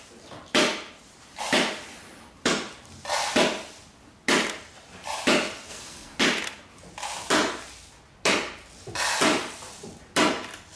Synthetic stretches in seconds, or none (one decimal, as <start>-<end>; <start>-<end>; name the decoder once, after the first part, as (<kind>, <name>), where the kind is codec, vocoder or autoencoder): 5.7-6.2 (codec, SNAC)